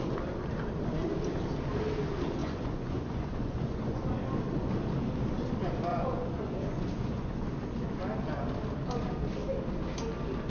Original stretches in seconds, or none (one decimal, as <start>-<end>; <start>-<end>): 0.0-2.4; 4.0-5.9; 7.5-10.5